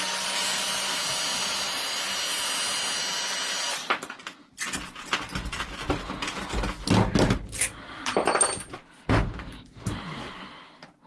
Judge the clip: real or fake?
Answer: real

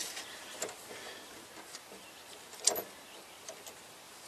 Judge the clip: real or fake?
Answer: real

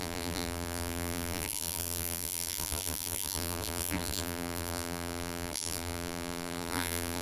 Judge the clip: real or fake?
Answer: fake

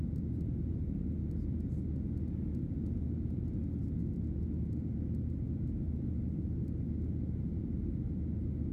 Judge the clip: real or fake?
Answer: real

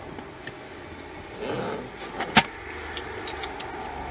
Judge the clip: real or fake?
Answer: real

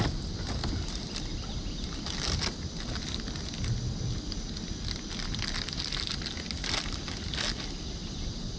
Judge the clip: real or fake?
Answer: real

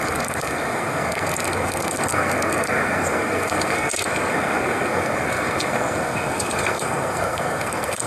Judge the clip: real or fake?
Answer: fake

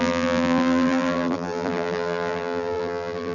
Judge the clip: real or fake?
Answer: fake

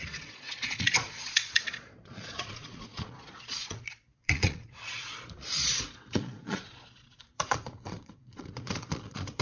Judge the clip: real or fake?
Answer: fake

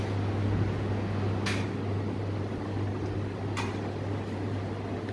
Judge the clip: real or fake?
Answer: real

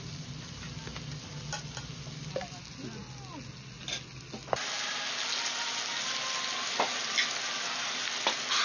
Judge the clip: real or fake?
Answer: real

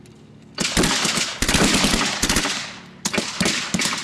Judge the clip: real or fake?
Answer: real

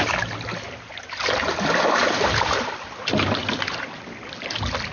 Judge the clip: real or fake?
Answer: real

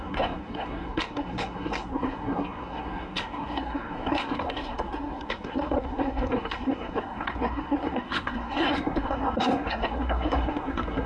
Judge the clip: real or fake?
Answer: fake